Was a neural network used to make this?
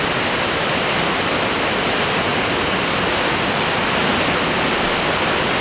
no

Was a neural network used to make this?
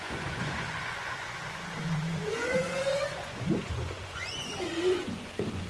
yes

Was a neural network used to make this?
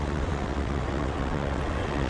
yes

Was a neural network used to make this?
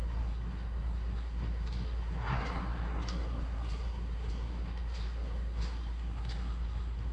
yes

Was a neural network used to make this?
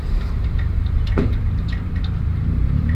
yes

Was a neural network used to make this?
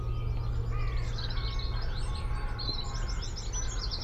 no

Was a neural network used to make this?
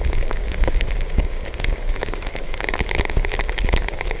yes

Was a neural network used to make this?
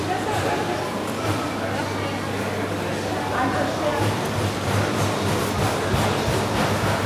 no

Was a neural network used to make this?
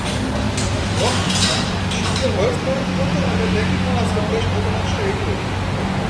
no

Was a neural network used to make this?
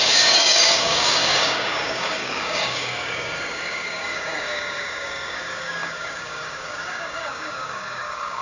yes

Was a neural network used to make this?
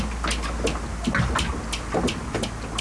no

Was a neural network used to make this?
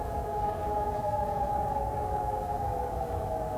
yes